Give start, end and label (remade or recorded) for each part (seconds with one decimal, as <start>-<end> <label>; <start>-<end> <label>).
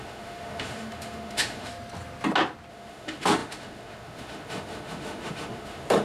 0.0-1.7 remade; 1.7-2.7 recorded; 2.7-6.0 remade